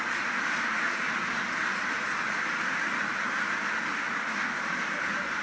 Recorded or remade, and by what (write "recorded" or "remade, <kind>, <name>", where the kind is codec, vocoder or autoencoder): recorded